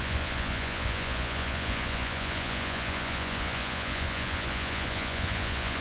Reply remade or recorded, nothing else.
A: remade